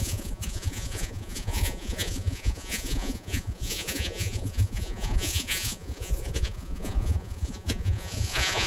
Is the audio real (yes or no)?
no